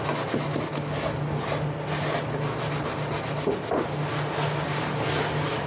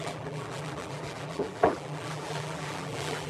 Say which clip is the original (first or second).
first